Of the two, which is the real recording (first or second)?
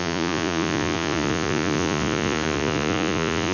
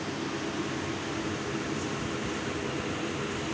second